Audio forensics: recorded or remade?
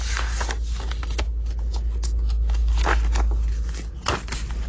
recorded